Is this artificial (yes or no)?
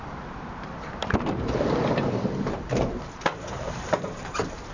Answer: yes